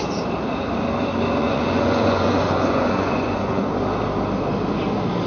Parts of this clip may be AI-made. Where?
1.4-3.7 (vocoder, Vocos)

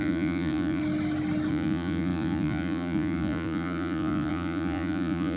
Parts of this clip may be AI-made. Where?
0.0-0.8 (vocoder, Vocos); 1.5-5.4

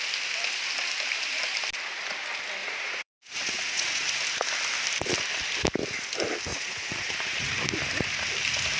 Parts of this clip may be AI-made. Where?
2.6-4.2 (vocoder, Vocos); 6.5-7.5